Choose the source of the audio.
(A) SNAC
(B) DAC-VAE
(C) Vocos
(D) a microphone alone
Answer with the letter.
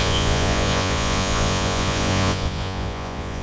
C